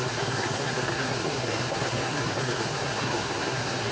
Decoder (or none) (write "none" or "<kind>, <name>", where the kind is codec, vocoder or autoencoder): codec, SNAC